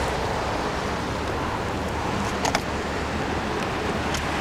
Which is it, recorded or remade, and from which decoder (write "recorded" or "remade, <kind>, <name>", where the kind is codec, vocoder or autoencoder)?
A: recorded